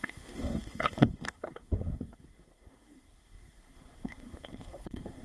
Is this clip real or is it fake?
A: fake